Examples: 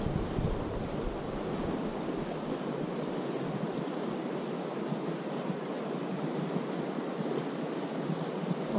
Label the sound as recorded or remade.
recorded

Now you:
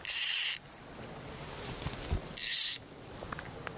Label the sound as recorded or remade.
recorded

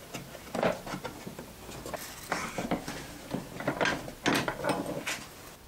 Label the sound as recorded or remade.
recorded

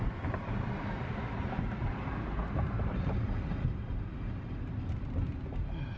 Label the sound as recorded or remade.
recorded